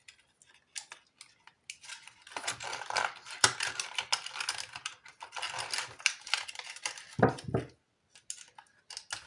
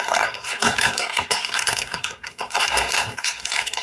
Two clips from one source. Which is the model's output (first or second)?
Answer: second